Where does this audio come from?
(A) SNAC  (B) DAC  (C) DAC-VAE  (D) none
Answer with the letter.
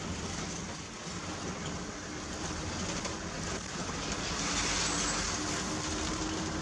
D